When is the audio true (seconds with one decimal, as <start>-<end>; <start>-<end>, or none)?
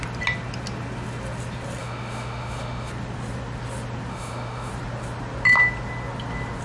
0.0-1.8; 2.9-4.1; 4.7-6.6